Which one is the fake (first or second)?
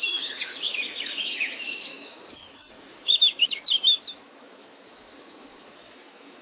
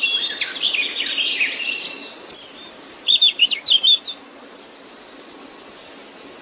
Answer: first